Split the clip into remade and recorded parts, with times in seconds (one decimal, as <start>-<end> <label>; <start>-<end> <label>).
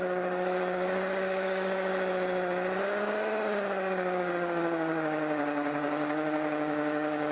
0.0-1.9 remade; 1.9-2.8 recorded; 2.8-7.3 remade